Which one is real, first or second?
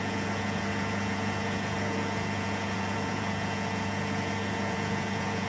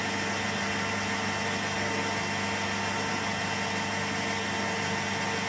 second